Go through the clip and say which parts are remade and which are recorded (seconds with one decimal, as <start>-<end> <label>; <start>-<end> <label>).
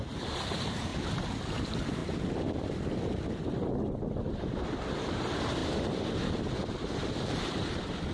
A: 0.0-0.9 remade; 0.9-1.6 recorded; 1.6-2.0 remade; 2.0-4.4 recorded; 4.4-5.6 remade; 5.6-6.7 recorded; 6.7-8.1 remade